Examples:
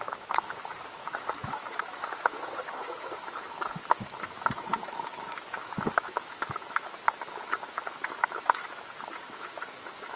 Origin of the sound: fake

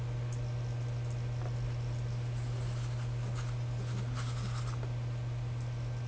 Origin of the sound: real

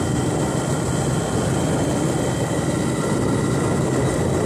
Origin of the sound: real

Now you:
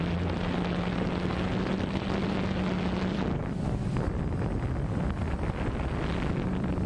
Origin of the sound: real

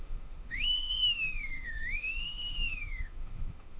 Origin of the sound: fake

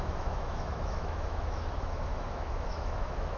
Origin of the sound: fake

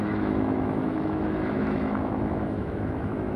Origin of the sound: fake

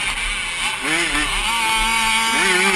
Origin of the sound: real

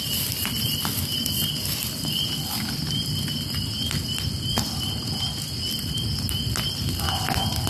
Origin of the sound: real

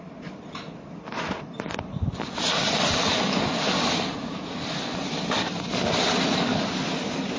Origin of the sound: real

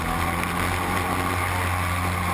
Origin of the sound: real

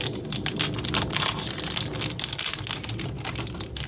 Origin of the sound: real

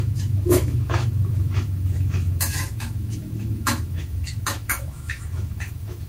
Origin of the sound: fake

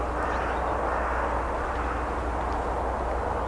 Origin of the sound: real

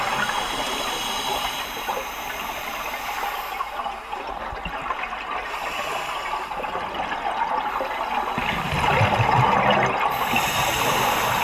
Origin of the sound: real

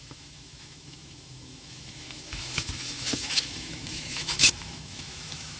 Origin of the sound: fake